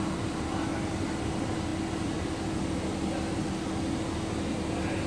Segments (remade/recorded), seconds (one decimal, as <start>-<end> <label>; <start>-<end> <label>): 0.0-5.1 recorded